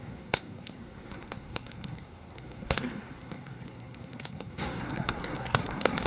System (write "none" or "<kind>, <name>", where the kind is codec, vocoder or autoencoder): codec, SNAC